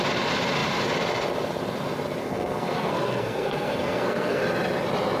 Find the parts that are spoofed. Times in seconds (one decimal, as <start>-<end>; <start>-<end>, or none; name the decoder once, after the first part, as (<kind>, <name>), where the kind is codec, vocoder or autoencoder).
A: 2.2-4.4 (codec, SNAC)